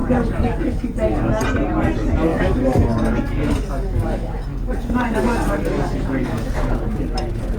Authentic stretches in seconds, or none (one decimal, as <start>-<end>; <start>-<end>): 1.3-2.3; 6.5-7.6